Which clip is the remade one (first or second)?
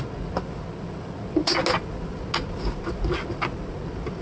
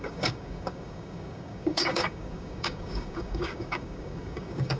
second